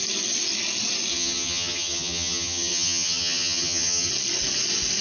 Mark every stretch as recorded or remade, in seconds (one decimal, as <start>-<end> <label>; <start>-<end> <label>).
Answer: 0.0-1.1 recorded; 1.1-4.1 remade; 4.1-5.0 recorded

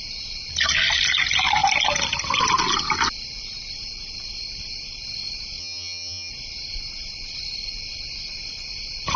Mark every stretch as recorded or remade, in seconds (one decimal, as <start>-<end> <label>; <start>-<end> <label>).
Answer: 0.0-5.6 recorded; 5.6-6.3 remade; 6.3-9.2 recorded

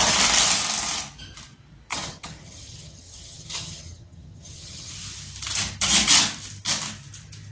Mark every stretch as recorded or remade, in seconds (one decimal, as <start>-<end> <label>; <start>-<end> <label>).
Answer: 0.0-1.9 recorded; 1.9-4.9 remade; 4.9-7.5 recorded

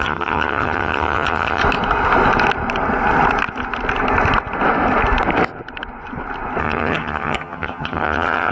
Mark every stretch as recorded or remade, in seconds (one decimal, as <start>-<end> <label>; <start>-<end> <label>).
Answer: 0.0-1.6 remade; 1.6-6.6 recorded; 6.6-8.5 remade

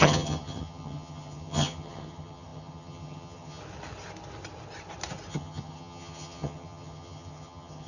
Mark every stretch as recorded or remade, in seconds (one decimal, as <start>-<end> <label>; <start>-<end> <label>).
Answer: 0.0-3.6 remade; 3.6-5.3 recorded; 5.3-7.9 remade

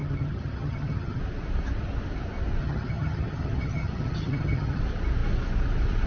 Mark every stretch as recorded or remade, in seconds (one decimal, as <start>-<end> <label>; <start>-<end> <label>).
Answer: 0.0-1.2 remade; 1.2-2.6 recorded; 2.6-4.8 remade; 4.8-6.1 recorded

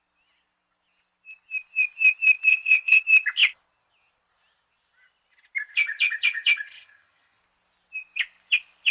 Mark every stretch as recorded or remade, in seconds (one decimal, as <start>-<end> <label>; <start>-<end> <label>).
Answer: 0.0-2.5 recorded; 2.5-3.0 remade; 3.0-5.7 recorded; 5.7-7.4 remade; 7.4-8.9 recorded